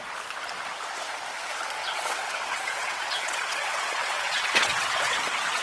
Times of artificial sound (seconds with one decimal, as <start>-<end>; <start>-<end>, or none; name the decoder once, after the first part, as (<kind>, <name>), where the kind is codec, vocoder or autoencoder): 1.8-5.6 (vocoder, WaveNeXt)